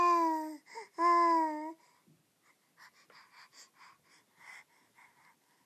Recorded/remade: recorded